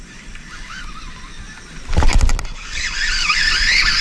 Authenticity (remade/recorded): recorded